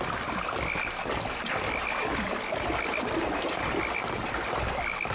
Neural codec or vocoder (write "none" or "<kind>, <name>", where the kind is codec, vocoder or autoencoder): none